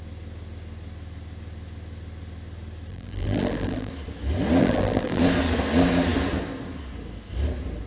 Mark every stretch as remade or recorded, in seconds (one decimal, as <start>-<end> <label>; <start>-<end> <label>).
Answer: 0.0-2.9 recorded; 2.9-3.9 remade; 3.9-4.6 recorded; 4.6-5.2 remade; 5.2-7.9 recorded